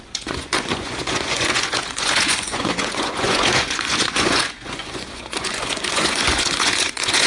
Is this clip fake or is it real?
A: fake